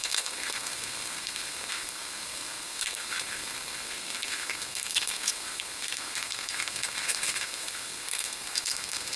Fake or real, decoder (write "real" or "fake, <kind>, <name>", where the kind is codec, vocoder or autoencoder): fake, codec, SNAC